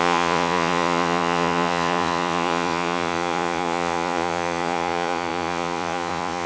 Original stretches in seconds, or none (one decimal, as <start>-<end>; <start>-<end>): none